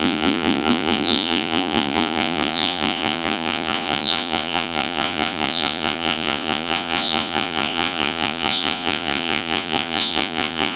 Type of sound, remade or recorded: remade